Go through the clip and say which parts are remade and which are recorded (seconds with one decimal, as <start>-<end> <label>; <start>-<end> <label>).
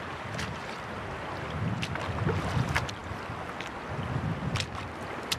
0.0-5.4 recorded